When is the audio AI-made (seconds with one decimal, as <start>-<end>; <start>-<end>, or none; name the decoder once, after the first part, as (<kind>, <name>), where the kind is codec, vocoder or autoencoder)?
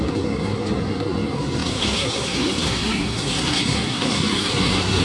0.0-5.0 (codec, SNAC)